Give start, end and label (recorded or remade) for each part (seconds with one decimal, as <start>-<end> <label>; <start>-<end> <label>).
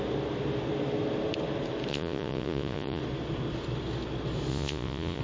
0.0-1.9 recorded; 1.9-3.0 remade; 3.0-4.5 recorded; 4.5-5.2 remade